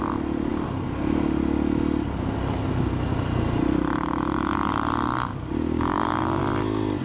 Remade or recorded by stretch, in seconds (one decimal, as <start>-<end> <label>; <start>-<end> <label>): 0.0-5.3 recorded; 5.3-6.4 remade; 6.4-7.0 recorded